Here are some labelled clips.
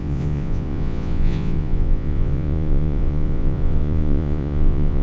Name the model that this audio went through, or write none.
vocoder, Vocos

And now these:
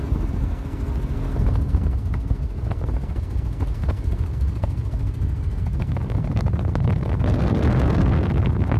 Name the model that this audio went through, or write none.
codec, SNAC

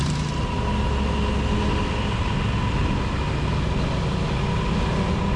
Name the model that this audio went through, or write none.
none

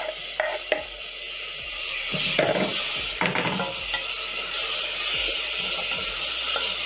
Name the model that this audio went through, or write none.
none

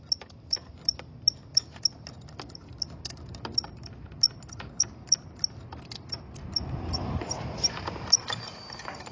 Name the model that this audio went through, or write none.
none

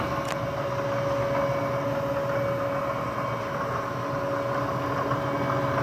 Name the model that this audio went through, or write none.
none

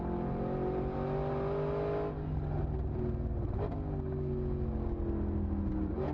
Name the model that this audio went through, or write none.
none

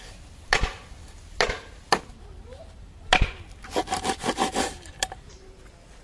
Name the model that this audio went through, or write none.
none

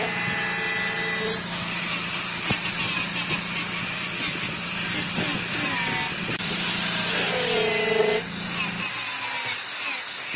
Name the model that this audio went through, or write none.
none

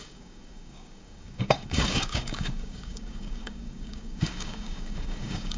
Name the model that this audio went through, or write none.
codec, DAC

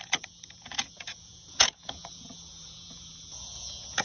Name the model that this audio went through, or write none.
vocoder, Vocos